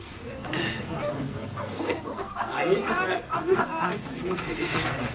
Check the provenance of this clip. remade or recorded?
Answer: remade